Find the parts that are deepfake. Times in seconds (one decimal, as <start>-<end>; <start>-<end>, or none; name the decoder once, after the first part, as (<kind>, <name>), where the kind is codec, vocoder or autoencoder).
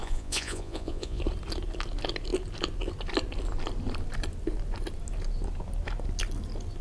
0.0-1.2 (vocoder, Vocos)